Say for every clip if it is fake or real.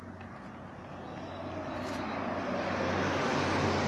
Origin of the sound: real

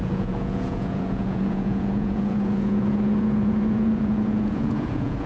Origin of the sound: fake